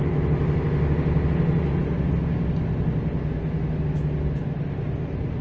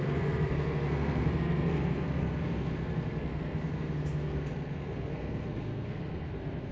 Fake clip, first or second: second